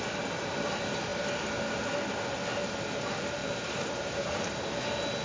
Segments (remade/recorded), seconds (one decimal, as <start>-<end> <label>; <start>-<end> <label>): 0.0-3.4 recorded; 3.4-4.5 remade; 4.5-5.2 recorded